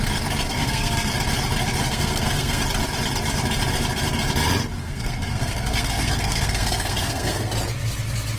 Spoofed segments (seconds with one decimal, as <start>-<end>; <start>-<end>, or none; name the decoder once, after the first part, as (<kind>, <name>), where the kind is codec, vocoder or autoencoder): 0.5-1.1 (codec, SNAC); 1.8-2.6; 4.8-7.5